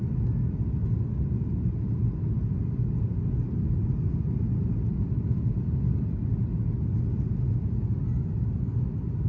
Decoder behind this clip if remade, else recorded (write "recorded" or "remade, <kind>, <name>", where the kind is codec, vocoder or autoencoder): recorded